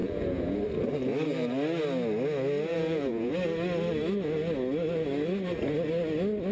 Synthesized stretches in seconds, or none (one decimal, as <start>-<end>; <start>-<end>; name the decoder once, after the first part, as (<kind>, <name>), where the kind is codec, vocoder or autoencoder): 0.0-0.6 (vocoder, Vocos); 2.7-3.3